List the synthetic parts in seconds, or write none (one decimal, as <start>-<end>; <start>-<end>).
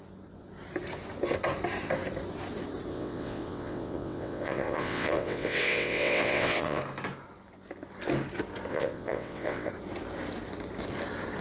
2.9-6.8; 8.7-9.7